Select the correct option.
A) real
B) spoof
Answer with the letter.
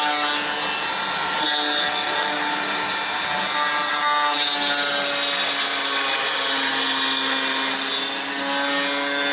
A